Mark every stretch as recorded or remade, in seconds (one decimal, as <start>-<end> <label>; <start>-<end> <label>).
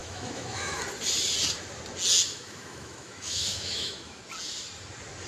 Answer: 0.0-0.8 remade; 0.8-2.3 recorded; 2.3-4.2 remade; 4.2-5.3 recorded